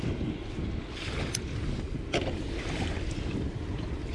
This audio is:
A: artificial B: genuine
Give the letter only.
B